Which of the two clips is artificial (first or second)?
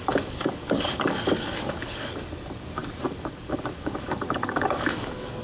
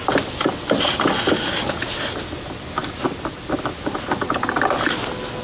first